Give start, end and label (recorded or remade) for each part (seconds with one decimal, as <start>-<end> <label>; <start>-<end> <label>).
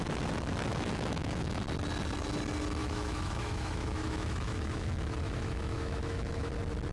0.0-0.7 recorded; 0.7-1.6 remade; 1.6-2.8 recorded; 2.8-6.5 remade; 6.5-6.9 recorded